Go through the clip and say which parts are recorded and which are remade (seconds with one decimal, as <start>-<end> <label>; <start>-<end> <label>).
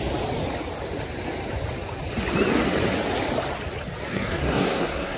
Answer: 0.0-4.0 recorded; 4.0-5.2 remade